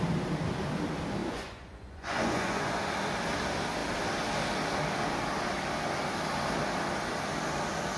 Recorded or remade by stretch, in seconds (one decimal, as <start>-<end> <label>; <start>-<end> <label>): 0.0-1.2 recorded; 1.2-2.8 remade; 2.8-8.0 recorded